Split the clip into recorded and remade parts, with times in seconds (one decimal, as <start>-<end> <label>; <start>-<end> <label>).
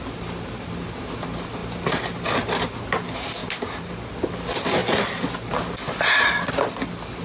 0.0-7.2 recorded